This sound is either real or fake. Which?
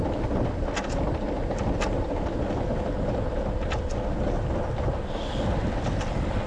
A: real